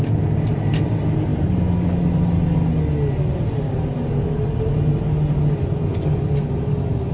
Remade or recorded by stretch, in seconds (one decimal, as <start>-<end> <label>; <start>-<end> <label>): 0.0-5.9 recorded; 5.9-7.1 remade